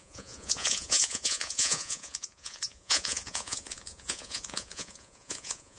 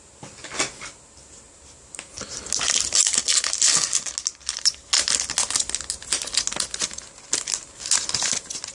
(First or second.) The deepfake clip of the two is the first